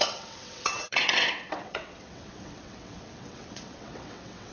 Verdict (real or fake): fake